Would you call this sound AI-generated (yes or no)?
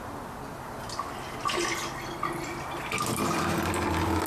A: no